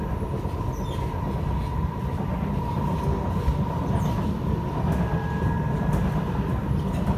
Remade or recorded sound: recorded